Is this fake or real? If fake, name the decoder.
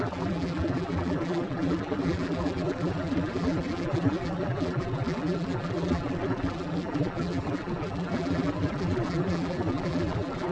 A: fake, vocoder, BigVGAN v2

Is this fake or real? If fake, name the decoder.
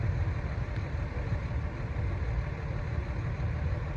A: real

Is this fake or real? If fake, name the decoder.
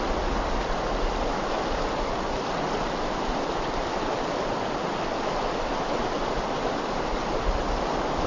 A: real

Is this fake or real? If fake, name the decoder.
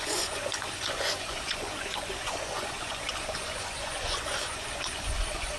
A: fake, vocoder, Vocos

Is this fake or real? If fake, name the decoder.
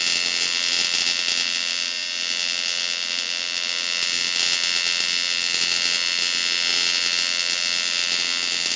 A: real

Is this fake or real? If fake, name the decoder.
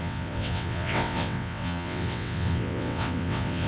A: fake, vocoder, WaveNeXt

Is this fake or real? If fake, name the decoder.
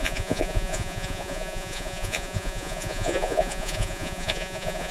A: fake, vocoder, Vocos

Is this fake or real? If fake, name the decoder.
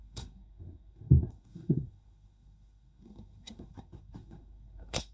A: fake, codec, SNAC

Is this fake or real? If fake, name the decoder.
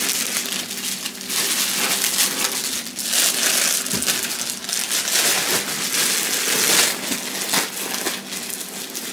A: real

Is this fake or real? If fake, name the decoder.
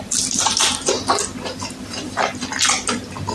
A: real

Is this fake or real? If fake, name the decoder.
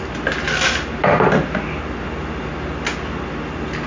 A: real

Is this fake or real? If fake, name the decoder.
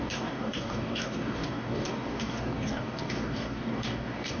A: fake, codec, DAC